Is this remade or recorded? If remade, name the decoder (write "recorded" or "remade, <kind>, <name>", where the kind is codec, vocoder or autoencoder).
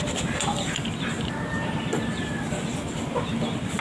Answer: recorded